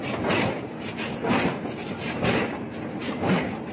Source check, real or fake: real